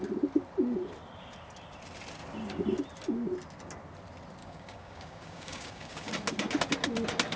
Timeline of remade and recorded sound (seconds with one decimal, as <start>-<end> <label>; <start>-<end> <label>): 0.0-4.4 recorded; 4.4-6.1 remade; 6.1-7.4 recorded

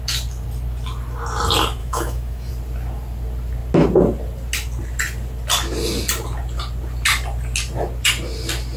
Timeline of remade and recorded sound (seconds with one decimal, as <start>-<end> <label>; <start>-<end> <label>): 0.0-1.8 recorded; 1.8-2.5 remade; 2.5-8.8 recorded

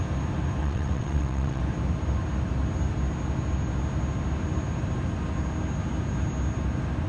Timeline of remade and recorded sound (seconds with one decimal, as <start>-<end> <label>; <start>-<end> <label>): 0.0-0.6 recorded; 0.6-1.6 remade; 1.6-7.1 recorded

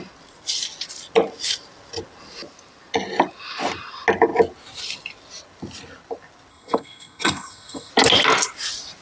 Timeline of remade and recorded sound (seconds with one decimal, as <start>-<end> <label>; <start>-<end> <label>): 0.0-6.5 recorded; 6.5-7.9 remade; 7.9-9.0 recorded

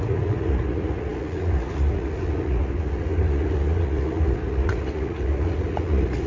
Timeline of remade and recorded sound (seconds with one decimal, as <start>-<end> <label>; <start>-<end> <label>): 0.0-6.3 remade

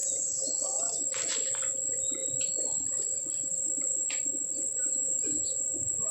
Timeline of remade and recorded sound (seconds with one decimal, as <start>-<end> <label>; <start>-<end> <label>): 0.0-0.6 remade; 0.6-2.2 recorded; 2.2-4.4 remade; 4.4-6.1 recorded

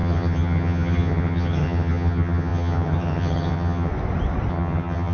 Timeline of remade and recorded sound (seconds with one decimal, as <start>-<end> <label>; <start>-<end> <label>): 0.0-3.9 remade; 3.9-4.5 recorded; 4.5-5.1 remade